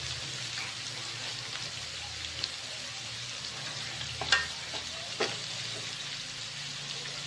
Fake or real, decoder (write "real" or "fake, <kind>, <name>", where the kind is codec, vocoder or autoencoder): real